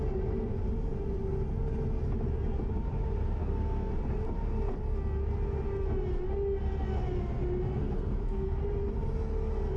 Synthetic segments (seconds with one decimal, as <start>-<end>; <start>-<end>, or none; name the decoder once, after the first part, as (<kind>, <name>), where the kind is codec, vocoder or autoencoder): 3.4-3.9 (codec, SNAC); 7.8-8.6